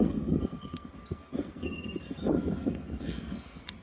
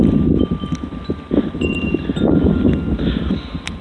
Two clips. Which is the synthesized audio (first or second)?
first